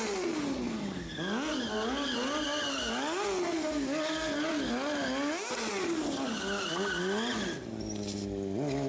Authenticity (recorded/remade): recorded